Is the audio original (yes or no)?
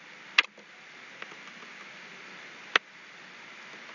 yes